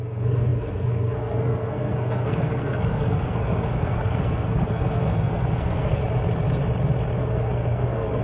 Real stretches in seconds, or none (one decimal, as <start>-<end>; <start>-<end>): 6.0-7.2